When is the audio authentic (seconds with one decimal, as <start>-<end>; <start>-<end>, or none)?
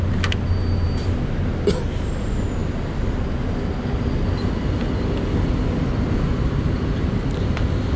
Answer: 0.0-8.0